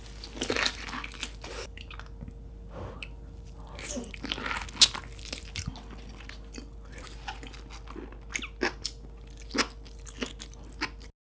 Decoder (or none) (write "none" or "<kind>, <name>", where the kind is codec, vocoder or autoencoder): none